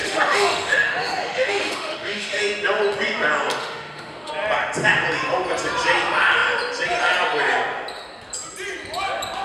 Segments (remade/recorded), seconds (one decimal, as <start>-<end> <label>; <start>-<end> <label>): 0.0-2.4 remade; 2.4-3.6 recorded; 3.6-4.3 remade; 4.3-9.4 recorded